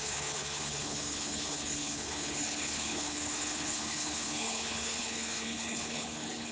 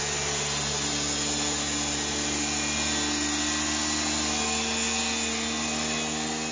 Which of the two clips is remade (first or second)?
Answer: first